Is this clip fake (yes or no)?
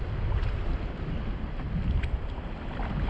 no